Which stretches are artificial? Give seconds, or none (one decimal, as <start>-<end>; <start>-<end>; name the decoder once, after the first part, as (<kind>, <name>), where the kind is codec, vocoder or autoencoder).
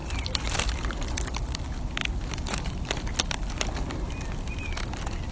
0.0-1.3 (vocoder, BigVGAN v2); 2.0-4.1